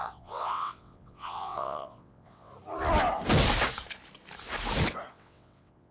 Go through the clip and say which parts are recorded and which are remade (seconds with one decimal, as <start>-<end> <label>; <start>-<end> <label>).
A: 0.0-2.5 remade; 2.5-5.1 recorded; 5.1-5.9 remade